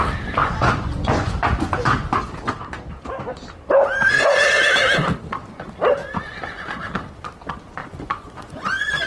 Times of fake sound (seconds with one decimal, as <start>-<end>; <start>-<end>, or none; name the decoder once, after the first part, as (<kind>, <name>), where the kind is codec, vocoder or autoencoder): 0.4-2.2 (vocoder, Vocos); 6.0-6.6; 7.8-9.1